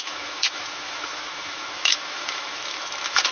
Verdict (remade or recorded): remade